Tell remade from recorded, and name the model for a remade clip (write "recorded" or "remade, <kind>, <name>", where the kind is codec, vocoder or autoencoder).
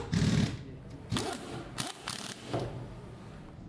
recorded